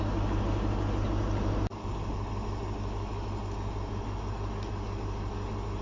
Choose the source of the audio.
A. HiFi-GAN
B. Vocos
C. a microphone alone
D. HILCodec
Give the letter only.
C